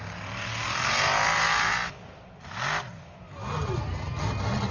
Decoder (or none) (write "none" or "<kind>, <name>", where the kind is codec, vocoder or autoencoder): none